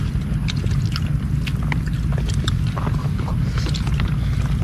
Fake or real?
real